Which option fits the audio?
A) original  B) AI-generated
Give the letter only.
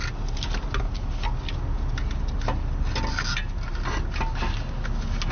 A